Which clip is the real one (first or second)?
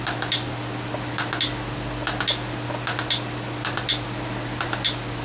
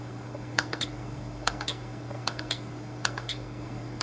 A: first